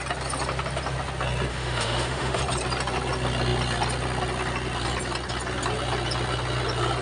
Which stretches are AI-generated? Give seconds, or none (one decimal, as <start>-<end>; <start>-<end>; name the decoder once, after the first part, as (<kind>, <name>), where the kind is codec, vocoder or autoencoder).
1.5-2.4 (autoencoder, DAC-VAE)